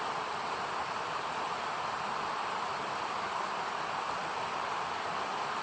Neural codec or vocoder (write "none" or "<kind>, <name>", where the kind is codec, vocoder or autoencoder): none